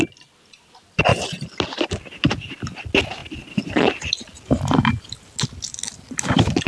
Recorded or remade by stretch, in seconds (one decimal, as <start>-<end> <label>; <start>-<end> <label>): 0.0-6.7 recorded